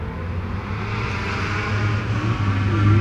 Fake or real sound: real